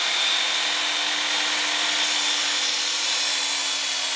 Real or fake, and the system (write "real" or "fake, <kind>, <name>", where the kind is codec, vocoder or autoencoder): real